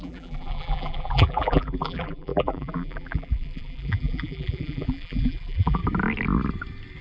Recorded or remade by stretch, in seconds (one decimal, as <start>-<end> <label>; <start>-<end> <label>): 0.0-5.8 remade; 5.8-7.0 recorded